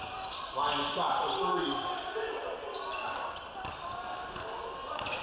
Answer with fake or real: real